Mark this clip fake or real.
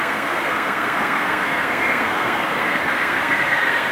fake